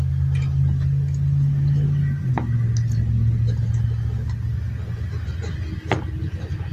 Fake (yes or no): no